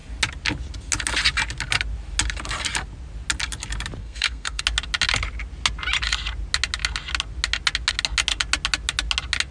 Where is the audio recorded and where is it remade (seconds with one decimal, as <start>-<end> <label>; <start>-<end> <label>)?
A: 0.0-4.0 recorded; 4.0-4.6 remade; 4.6-9.5 recorded